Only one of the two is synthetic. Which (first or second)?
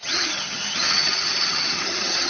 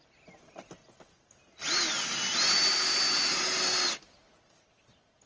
first